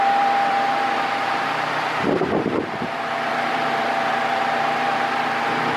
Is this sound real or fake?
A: fake